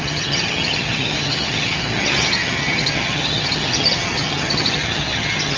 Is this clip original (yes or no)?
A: no